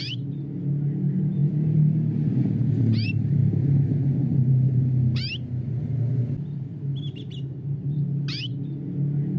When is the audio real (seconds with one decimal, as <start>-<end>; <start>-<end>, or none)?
0.0-9.4